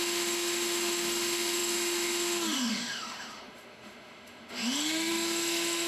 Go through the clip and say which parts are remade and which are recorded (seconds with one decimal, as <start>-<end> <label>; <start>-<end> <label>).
0.0-5.9 remade